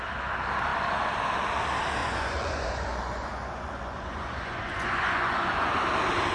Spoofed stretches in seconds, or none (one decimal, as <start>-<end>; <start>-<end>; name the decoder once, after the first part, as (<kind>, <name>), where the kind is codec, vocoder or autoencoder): 2.0-5.7 (vocoder, Vocos)